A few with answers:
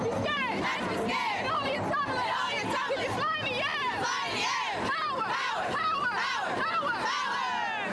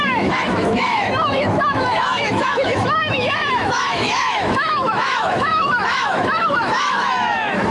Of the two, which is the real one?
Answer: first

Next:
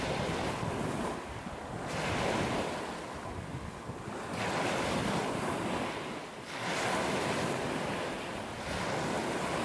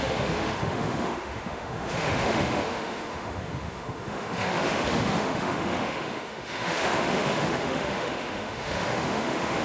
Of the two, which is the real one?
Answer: first